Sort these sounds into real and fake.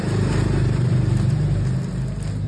real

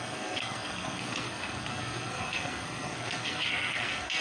fake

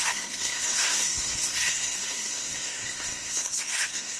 fake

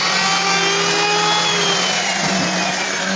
real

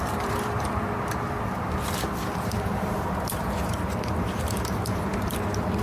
fake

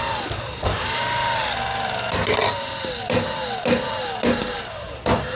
real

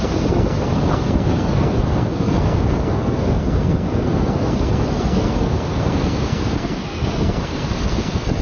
fake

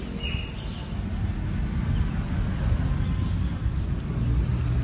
real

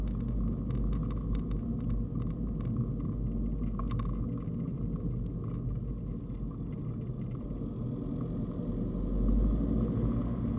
real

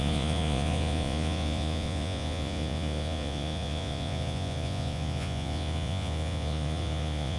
fake